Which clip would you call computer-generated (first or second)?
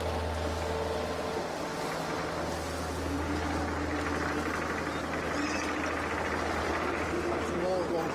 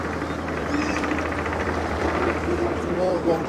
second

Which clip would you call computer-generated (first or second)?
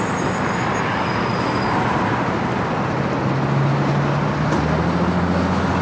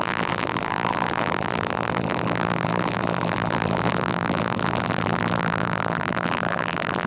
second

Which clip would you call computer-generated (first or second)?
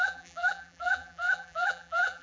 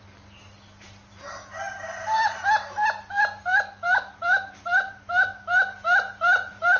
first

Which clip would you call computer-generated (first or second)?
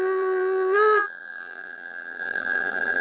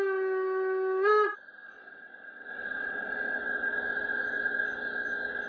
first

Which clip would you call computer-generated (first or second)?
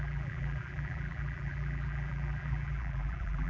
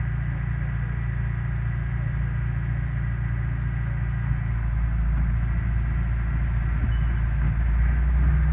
first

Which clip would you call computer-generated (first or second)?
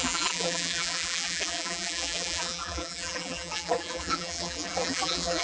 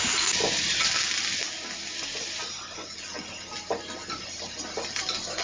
first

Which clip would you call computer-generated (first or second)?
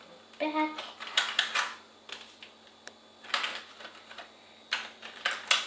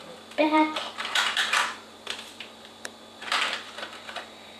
second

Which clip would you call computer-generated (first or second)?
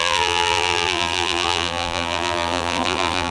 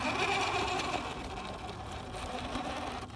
first